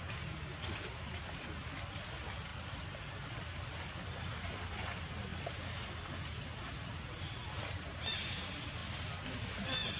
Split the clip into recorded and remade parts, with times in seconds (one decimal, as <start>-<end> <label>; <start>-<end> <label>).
0.0-2.5 recorded; 2.5-3.3 remade; 3.3-5.3 recorded; 5.3-7.2 remade; 7.2-10.0 recorded